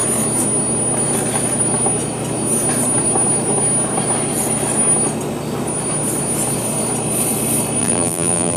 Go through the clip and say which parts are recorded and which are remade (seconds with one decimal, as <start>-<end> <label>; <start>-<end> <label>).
0.0-7.8 recorded; 7.8-8.6 remade